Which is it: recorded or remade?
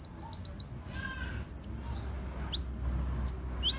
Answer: recorded